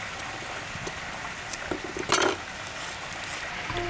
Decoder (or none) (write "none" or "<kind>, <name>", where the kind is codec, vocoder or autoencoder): none